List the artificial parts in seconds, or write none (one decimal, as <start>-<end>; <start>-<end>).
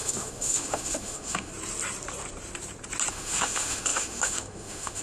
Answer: 0.0-1.5; 3.1-5.0